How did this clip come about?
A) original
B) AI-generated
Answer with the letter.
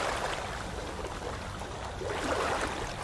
A